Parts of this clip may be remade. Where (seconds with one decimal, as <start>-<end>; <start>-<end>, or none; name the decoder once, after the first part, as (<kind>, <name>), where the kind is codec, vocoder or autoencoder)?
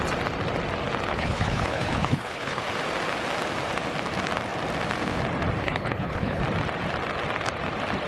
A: 1.1-2.6 (codec, HILCodec); 5.6-6.4